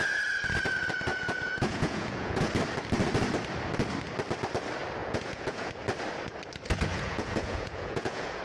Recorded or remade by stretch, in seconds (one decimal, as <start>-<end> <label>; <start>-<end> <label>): 0.0-1.1 recorded; 1.1-2.5 remade; 2.5-5.0 recorded; 5.0-5.7 remade; 5.7-6.9 recorded; 6.9-8.4 remade